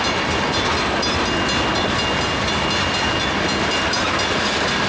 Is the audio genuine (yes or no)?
yes